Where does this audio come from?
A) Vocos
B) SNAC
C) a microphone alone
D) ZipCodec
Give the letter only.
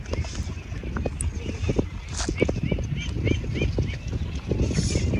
C